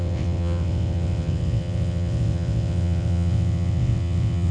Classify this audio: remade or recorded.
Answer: remade